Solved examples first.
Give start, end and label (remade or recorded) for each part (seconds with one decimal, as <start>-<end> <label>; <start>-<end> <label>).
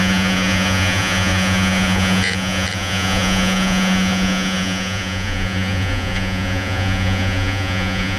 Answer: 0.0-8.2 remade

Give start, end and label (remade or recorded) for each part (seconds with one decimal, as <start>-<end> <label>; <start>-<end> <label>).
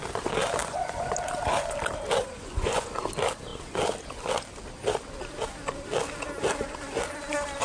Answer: 0.0-0.6 recorded; 0.6-1.1 remade; 1.1-2.2 recorded; 2.2-3.0 remade; 3.0-7.6 recorded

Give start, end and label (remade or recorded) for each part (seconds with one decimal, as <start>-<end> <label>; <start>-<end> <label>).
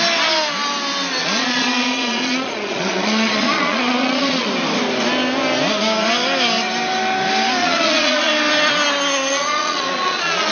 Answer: 0.0-1.2 recorded; 1.2-4.5 remade; 4.5-7.6 recorded; 7.6-8.3 remade; 8.3-9.3 recorded; 9.3-10.5 remade